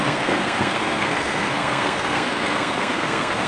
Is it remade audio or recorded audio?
remade